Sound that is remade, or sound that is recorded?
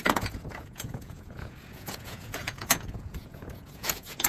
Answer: remade